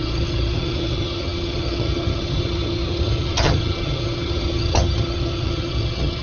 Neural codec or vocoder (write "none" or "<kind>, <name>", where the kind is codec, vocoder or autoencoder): vocoder, HiFi-GAN